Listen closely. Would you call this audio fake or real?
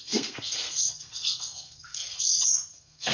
fake